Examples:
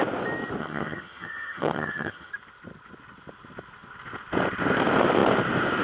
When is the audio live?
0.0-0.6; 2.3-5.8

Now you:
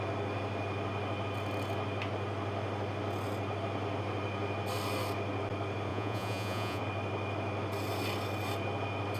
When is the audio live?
0.0-5.9; 6.8-9.2

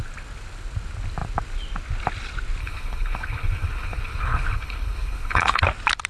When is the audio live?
0.0-2.6; 5.6-6.1

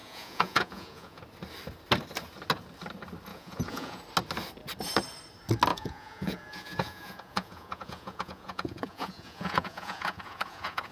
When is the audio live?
1.2-3.3; 4.0-5.7

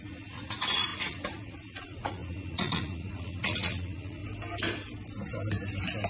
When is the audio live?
4.2-6.1

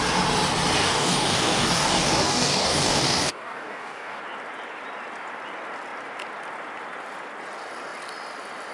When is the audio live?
0.0-0.8; 4.2-8.7